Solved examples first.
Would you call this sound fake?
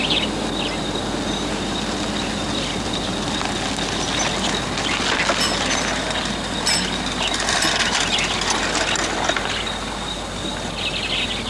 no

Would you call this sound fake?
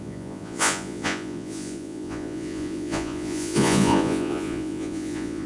yes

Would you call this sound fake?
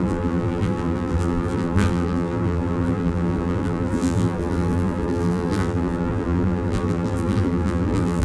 yes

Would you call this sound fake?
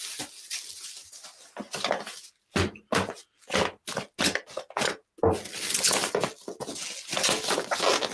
no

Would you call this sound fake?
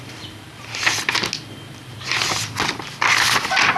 no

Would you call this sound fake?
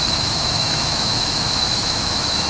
yes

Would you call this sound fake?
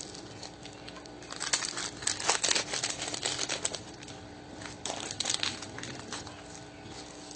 no